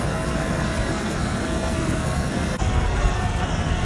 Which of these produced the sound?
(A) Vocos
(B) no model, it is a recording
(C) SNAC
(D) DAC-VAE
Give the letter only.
C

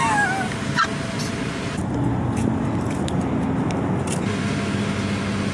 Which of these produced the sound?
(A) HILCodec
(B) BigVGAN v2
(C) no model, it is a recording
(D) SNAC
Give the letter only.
C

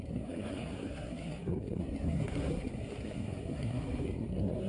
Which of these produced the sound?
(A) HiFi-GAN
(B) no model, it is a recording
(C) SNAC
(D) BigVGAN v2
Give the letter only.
C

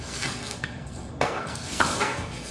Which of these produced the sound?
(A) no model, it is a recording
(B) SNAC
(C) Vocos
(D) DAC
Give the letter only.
B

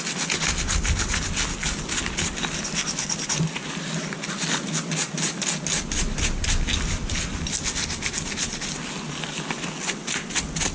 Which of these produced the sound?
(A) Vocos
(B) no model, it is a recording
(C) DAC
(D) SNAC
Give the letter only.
B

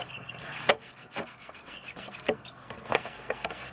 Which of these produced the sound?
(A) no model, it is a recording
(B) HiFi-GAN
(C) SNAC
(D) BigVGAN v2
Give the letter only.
C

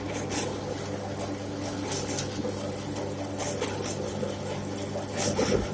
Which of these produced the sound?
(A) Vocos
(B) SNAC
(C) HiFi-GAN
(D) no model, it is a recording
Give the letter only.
D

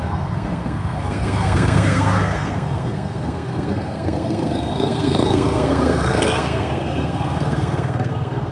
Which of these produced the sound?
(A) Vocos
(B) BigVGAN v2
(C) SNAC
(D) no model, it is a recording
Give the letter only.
C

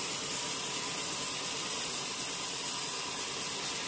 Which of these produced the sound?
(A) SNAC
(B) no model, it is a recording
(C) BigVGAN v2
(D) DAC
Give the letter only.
B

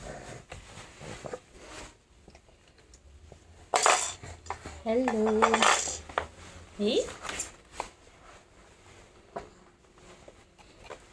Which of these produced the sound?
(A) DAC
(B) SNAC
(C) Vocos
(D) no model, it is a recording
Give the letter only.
D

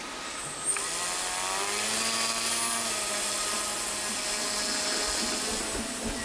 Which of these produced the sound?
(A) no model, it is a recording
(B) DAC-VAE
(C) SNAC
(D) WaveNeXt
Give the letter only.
A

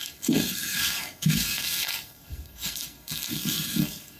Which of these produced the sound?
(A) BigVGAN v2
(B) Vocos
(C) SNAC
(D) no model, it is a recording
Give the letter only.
C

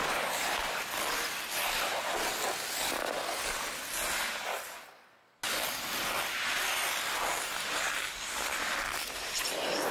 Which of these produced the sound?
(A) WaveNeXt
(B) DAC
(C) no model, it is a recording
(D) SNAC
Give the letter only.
C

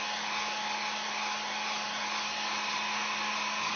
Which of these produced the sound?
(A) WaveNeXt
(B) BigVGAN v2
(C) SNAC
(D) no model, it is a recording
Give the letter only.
D